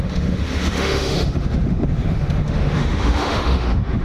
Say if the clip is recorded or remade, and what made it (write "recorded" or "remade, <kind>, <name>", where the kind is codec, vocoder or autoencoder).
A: remade, autoencoder, DAC-VAE